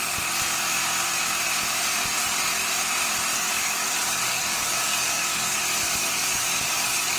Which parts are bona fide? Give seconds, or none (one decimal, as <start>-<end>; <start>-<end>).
0.0-3.3; 5.6-6.0